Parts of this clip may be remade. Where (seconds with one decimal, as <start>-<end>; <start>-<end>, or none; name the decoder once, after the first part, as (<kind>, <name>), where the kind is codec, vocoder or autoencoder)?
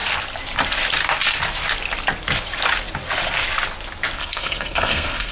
4.2-5.3 (codec, SNAC)